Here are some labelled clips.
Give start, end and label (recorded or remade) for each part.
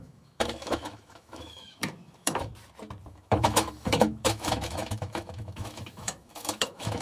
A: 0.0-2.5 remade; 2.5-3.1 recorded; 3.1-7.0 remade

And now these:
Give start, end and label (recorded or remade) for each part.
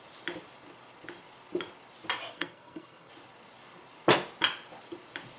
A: 0.0-2.3 recorded; 2.3-3.1 remade; 3.1-5.4 recorded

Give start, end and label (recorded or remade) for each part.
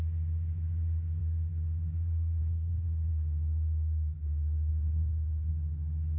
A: 0.0-2.4 recorded; 2.4-3.1 remade; 3.1-4.7 recorded; 4.7-5.5 remade; 5.5-6.2 recorded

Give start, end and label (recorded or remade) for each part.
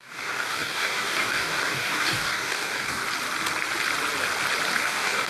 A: 0.0-3.0 remade; 3.0-4.8 recorded; 4.8-5.3 remade